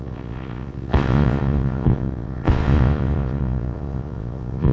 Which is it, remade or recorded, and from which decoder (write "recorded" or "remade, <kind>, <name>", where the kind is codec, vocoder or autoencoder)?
remade, vocoder, Vocos